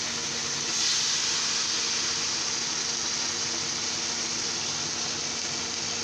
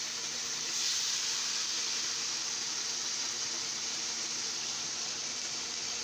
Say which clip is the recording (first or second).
first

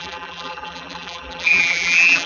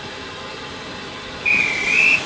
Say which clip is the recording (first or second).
second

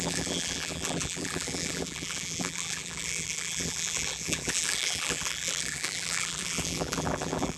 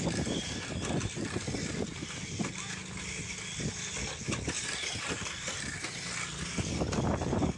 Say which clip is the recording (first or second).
second